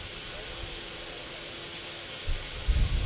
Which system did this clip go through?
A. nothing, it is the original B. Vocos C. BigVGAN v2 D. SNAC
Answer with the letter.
A